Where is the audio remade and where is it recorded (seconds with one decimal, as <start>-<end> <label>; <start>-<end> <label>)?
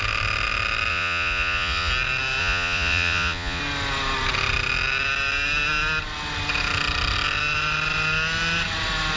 0.0-0.9 recorded; 0.9-1.9 remade; 1.9-2.4 recorded; 2.4-3.6 remade; 3.6-9.2 recorded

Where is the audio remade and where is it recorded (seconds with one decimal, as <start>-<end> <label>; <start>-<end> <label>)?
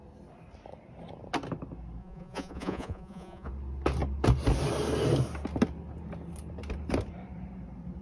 0.0-2.0 recorded; 2.0-3.5 remade; 3.5-8.0 recorded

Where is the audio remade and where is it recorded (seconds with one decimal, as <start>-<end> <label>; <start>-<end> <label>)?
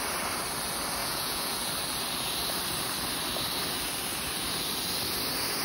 0.0-1.0 recorded; 1.0-1.7 remade; 1.7-5.6 recorded